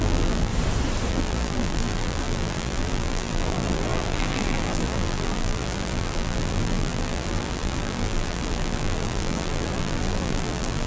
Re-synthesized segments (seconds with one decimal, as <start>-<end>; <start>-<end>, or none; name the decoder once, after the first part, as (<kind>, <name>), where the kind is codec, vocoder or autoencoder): 0.0-0.5 (vocoder, BigVGAN v2); 1.1-10.9